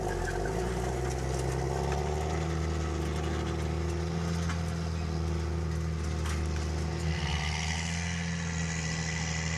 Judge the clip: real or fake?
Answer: real